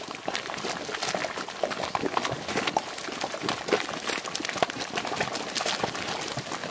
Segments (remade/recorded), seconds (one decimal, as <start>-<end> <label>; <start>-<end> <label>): 0.0-6.7 recorded